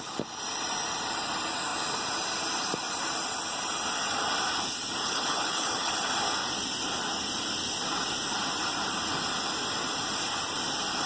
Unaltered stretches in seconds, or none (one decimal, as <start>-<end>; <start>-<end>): 0.0-5.0; 5.9-11.1

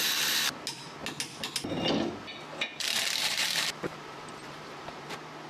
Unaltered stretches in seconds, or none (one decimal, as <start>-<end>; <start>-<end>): 0.0-3.2; 5.0-5.5

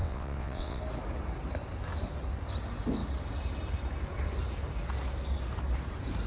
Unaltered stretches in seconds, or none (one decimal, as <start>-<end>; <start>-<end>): 0.8-6.3

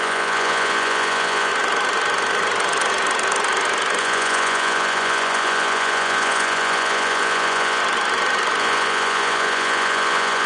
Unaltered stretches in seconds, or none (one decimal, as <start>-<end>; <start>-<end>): 1.5-4.0; 7.8-8.6

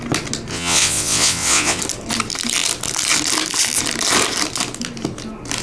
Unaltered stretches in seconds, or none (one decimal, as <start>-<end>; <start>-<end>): 0.0-0.5; 1.8-5.6

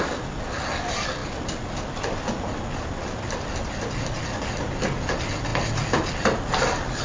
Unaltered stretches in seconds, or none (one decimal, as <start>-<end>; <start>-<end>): 0.0-7.0

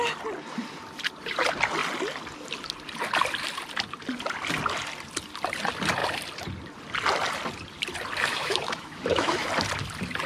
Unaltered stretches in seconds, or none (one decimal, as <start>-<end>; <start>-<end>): 0.0-8.3; 9.5-10.3

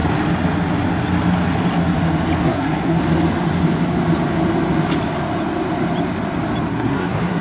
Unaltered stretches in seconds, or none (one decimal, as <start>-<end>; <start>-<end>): 0.0-2.4; 3.0-6.7